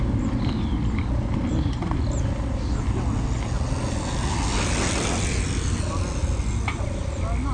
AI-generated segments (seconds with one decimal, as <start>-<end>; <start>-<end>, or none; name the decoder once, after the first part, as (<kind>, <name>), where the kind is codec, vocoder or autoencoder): none